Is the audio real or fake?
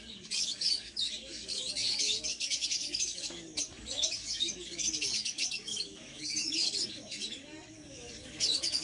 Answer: fake